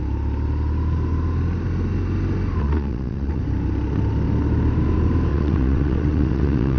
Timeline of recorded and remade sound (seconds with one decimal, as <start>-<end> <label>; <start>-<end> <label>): 0.0-2.6 recorded; 2.6-3.4 remade; 3.4-5.3 recorded; 5.3-6.8 remade